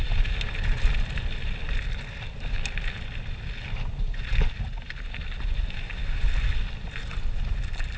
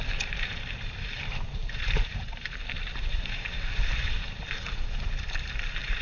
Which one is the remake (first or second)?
second